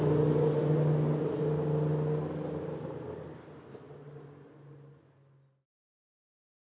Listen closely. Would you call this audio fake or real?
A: real